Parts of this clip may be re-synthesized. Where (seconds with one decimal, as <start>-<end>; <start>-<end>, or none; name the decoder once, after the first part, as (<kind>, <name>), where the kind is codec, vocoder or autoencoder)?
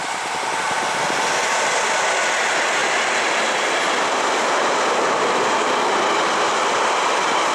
none